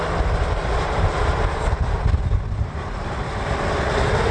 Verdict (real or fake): real